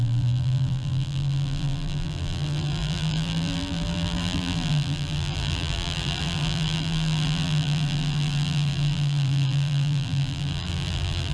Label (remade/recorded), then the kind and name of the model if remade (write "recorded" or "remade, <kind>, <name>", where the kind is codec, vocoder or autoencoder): remade, vocoder, BigVGAN v2